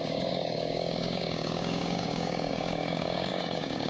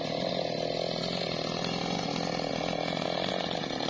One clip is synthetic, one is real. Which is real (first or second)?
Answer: second